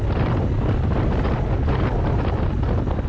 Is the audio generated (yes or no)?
no